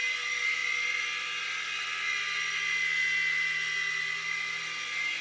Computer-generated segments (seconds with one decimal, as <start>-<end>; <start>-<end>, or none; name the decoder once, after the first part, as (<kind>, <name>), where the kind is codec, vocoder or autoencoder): none